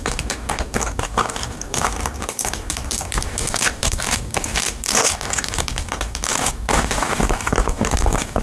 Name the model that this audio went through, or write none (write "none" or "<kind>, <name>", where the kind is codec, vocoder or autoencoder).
codec, DAC